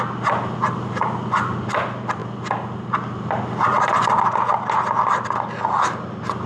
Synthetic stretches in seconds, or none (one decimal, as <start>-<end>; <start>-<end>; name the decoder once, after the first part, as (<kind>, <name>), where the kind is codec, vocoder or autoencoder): none